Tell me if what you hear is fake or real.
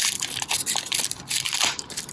fake